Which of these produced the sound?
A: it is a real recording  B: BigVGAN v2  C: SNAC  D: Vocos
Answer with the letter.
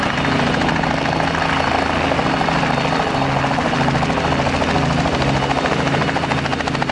A